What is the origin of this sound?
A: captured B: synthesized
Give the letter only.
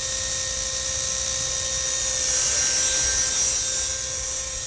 A